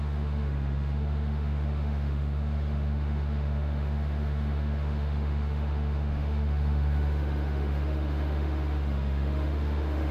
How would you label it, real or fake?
fake